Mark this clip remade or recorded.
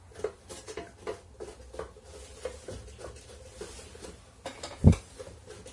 recorded